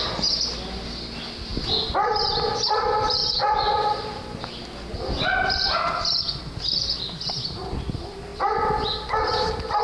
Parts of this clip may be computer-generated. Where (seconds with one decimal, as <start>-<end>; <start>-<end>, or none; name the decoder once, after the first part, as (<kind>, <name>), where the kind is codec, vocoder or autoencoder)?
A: 1.5-2.8 (vocoder, BigVGAN v2); 3.2-7.0; 8.3-9.1

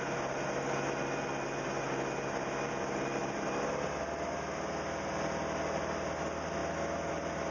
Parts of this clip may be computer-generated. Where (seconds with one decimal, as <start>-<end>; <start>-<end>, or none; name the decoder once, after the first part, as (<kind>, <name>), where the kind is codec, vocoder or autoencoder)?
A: none

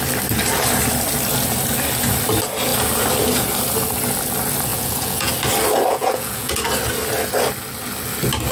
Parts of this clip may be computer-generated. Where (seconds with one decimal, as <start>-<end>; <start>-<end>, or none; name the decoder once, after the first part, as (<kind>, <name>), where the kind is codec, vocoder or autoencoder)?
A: 4.7-5.3 (vocoder, Vocos); 5.9-6.5

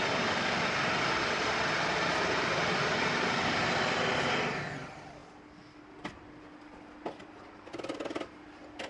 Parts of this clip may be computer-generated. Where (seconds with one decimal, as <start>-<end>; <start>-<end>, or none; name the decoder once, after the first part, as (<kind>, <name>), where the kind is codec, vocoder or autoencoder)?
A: none

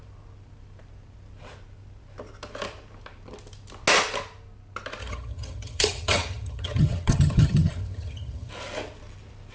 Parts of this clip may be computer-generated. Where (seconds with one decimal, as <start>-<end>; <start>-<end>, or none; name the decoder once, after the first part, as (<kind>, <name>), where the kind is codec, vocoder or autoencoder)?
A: 5.0-8.5 (vocoder, HiFi-GAN)

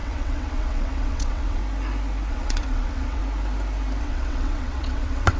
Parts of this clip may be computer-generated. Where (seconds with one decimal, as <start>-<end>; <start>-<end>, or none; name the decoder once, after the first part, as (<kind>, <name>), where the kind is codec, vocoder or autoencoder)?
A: 0.0-1.6 (vocoder, WaveNeXt); 2.3-3.2; 4.0-5.4